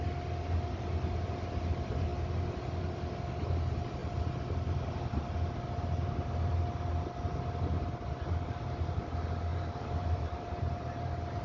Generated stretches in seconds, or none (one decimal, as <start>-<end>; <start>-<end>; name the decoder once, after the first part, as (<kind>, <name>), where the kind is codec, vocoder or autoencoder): 9.5-11.0 (vocoder, BigVGAN v2)